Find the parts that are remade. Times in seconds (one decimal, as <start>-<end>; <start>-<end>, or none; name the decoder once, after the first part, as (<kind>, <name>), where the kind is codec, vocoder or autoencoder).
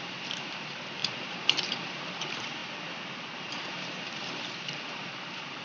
0.0-2.6 (vocoder, BigVGAN v2); 3.1-5.6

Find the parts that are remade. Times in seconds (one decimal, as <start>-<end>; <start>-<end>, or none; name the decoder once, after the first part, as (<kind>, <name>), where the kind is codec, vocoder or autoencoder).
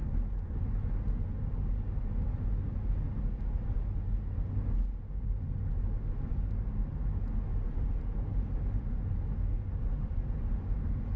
none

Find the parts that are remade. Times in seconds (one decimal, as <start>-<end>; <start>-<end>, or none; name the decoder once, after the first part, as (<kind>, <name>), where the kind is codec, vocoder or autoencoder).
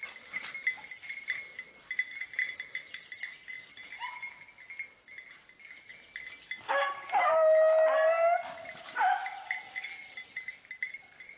none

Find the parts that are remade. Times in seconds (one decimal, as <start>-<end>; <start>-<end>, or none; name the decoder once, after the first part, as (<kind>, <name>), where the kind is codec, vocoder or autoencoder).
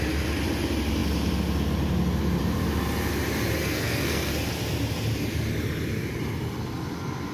3.6-4.3 (codec, SNAC)